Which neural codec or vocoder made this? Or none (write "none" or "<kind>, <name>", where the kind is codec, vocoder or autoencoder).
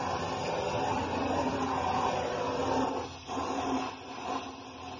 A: none